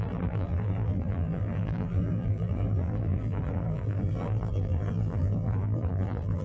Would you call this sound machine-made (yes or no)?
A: yes